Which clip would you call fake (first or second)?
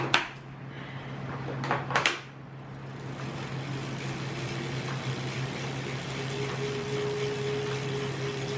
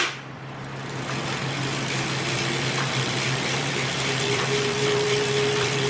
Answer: second